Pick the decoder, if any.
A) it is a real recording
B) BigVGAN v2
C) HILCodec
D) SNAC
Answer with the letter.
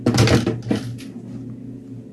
A